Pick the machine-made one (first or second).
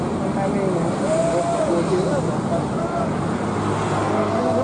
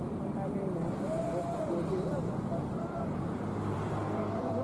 second